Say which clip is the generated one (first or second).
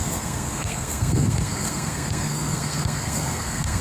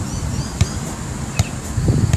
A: first